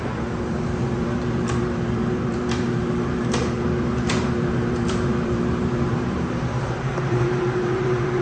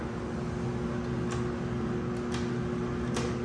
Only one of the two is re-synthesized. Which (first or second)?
first